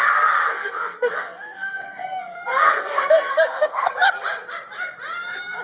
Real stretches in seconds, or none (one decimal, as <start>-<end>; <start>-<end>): 0.0-0.5; 3.9-5.6